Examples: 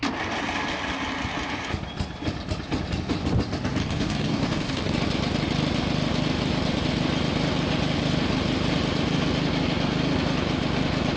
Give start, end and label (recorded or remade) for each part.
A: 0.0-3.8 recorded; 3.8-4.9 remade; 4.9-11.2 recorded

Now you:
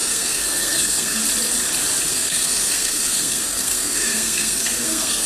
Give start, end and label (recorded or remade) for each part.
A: 0.0-1.2 remade; 1.2-2.1 recorded; 2.1-5.3 remade

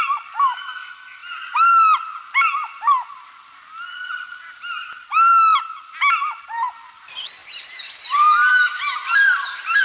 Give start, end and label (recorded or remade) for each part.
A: 0.0-7.4 recorded; 7.4-9.8 remade

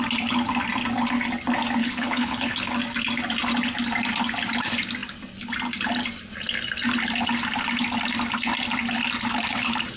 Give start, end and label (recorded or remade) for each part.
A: 0.0-1.8 recorded; 1.8-2.7 remade; 2.7-10.0 recorded

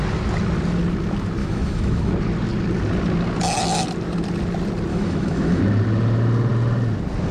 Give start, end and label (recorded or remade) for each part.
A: 0.0-1.4 recorded; 1.4-2.1 remade; 2.1-4.9 recorded; 4.9-5.6 remade; 5.6-7.3 recorded

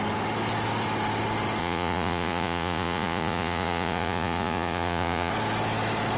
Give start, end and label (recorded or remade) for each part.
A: 0.0-1.6 recorded; 1.6-5.3 remade; 5.3-6.2 recorded

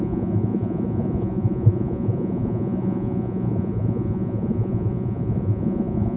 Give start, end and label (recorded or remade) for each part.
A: 0.0-6.2 remade